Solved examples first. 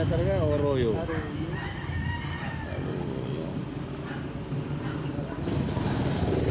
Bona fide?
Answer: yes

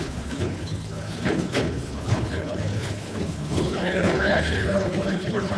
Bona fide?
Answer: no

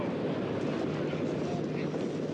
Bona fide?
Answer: yes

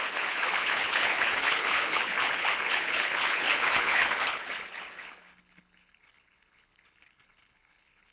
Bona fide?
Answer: no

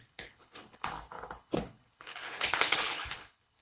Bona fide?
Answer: no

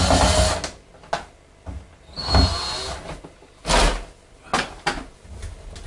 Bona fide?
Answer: yes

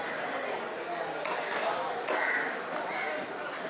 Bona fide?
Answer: yes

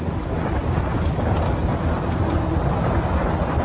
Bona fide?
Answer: yes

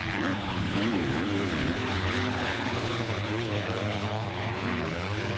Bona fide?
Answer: no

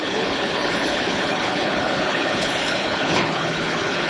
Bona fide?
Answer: no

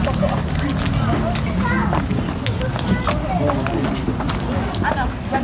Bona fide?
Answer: yes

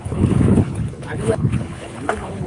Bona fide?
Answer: no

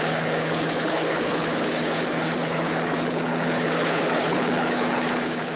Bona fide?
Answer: no